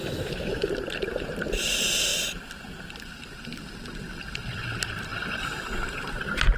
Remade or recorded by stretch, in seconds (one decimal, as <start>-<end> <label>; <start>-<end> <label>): 0.0-0.7 remade; 0.7-6.6 recorded